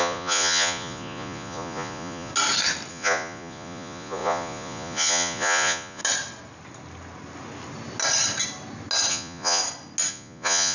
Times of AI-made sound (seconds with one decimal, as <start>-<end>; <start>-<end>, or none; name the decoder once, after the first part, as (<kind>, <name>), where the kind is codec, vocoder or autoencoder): 0.0-2.3 (vocoder, Vocos); 2.9-6.0; 9.1-9.6; 10.1-10.7

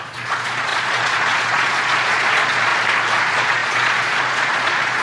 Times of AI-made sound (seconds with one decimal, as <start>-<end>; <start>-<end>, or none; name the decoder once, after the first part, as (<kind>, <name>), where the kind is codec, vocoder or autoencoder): 0.0-2.7 (vocoder, Vocos); 3.2-5.0

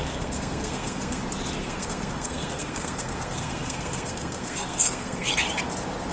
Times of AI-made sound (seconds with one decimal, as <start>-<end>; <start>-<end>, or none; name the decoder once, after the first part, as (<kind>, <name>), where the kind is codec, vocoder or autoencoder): 0.0-1.2 (codec, SNAC); 1.6-5.3

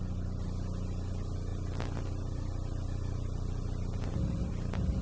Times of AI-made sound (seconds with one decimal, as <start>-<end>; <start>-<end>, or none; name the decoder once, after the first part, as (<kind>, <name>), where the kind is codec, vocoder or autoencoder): none

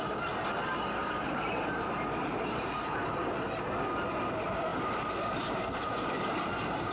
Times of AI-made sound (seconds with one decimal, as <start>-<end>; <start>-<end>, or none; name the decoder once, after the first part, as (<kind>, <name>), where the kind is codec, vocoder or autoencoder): 1.0-3.1 (vocoder, BigVGAN v2); 4.7-6.9

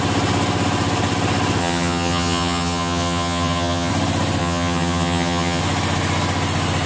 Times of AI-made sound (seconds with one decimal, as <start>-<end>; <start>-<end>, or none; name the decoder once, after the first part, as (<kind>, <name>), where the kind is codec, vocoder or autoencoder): 1.6-3.9 (vocoder, HiFi-GAN); 4.4-5.6

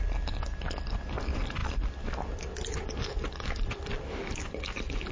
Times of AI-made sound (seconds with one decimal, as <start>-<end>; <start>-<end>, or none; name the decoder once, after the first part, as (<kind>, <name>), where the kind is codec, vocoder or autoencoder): none

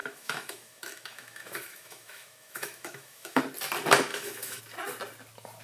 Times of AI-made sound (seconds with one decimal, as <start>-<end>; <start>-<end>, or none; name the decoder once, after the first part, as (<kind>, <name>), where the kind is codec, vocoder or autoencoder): 0.0-3.4 (autoencoder, DAC-VAE); 4.1-4.6